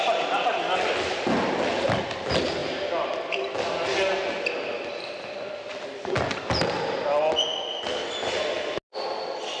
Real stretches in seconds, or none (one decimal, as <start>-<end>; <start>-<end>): 0.0-9.6